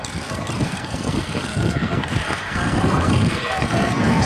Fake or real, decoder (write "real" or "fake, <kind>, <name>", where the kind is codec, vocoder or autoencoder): fake, codec, SNAC